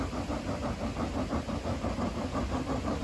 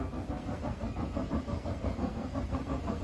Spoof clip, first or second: second